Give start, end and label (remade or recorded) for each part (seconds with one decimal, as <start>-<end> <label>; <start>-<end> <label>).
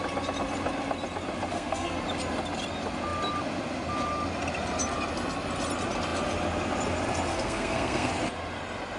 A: 0.0-1.5 recorded; 1.5-2.0 remade; 2.0-7.3 recorded; 7.3-8.1 remade; 8.1-9.0 recorded